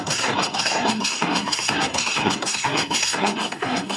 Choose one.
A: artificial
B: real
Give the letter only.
A